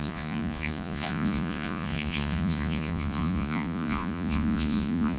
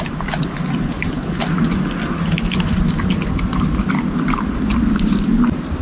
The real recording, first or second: second